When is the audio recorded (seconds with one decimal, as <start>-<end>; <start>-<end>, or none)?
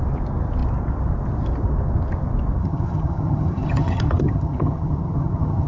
0.0-2.6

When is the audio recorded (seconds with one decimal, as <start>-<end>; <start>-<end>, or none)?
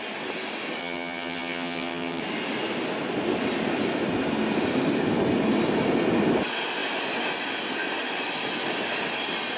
0.0-0.8; 2.2-9.6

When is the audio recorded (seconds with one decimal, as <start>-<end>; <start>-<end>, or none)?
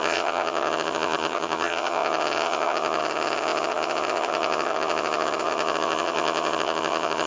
none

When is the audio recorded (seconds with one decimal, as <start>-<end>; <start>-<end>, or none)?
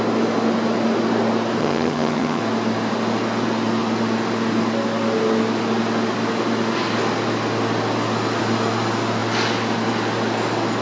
0.0-1.6; 2.4-10.8